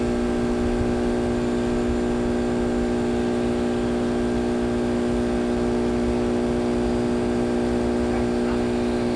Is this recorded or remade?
recorded